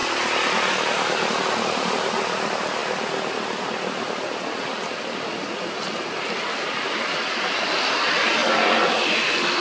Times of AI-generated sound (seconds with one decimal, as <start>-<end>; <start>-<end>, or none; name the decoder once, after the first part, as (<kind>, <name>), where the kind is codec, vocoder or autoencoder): 0.0-0.7 (vocoder, BigVGAN v2)